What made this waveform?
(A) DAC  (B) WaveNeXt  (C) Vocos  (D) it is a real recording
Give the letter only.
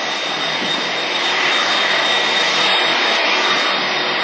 D